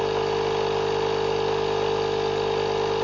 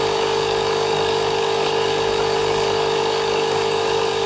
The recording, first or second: first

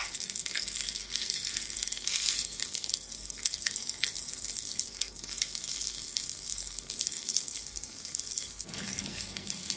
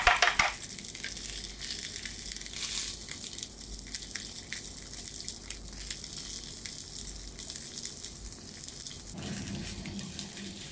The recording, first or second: second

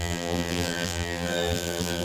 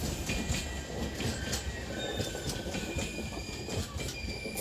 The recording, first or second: second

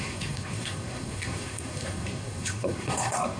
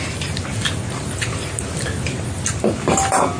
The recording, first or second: second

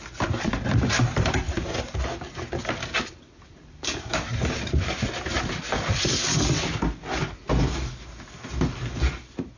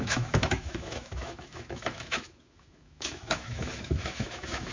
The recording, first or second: first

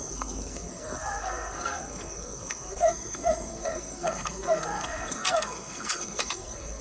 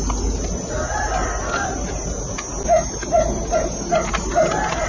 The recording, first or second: second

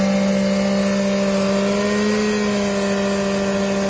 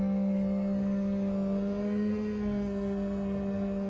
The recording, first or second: first